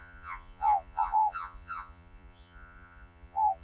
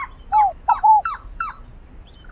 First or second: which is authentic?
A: second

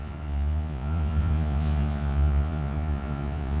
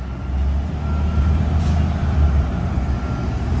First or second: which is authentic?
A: second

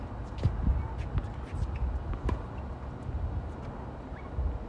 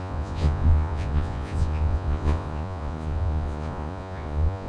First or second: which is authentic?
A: first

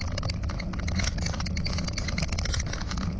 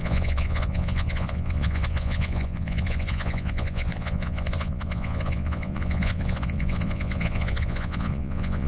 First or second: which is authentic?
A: first